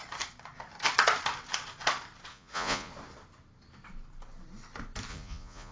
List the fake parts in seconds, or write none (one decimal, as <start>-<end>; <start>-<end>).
2.3-2.9; 5.1-5.7